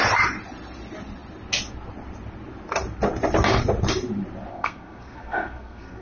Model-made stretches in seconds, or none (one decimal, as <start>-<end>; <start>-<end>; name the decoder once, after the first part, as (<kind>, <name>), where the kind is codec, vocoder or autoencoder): 4.5-6.0 (codec, SNAC)